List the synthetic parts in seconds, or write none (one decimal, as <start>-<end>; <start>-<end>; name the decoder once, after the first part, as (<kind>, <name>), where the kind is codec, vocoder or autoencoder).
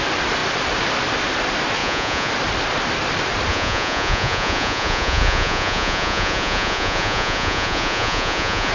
1.8-2.3 (vocoder, Vocos); 3.5-8.7